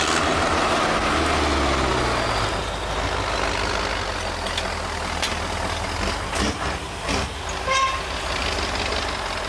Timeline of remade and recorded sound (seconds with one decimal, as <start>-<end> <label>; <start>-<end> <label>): 0.0-9.5 recorded